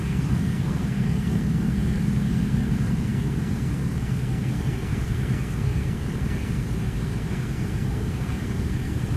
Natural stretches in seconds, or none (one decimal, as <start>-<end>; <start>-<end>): none